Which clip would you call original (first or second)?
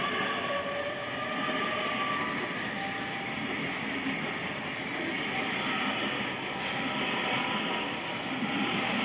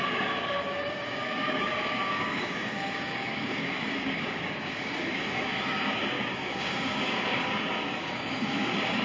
first